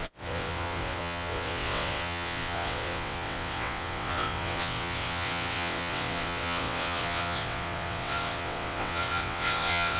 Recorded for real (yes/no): no